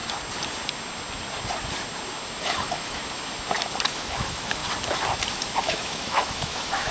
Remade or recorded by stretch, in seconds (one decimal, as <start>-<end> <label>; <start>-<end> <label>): 0.0-2.4 recorded; 2.4-3.0 remade; 3.0-3.9 recorded; 3.9-4.6 remade; 4.6-5.6 recorded; 5.6-6.9 remade

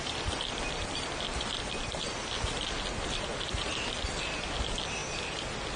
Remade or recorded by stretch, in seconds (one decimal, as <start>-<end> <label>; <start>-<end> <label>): 0.0-5.8 recorded

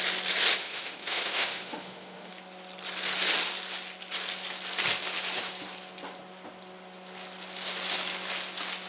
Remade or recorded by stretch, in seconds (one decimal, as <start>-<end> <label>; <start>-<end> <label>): 0.0-0.6 recorded; 0.6-2.3 remade; 2.3-8.9 recorded

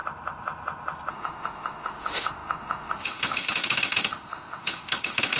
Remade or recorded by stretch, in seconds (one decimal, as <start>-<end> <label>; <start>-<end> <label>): 0.0-1.1 recorded; 1.1-5.4 remade

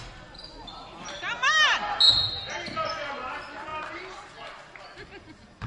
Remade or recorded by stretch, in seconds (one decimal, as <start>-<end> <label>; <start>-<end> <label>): 0.0-5.7 recorded